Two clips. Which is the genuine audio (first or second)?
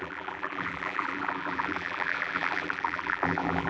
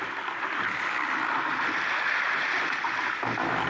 second